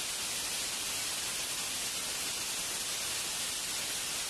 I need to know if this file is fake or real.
real